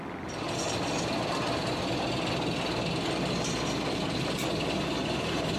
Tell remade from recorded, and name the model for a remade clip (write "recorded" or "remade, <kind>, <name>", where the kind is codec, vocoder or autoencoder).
recorded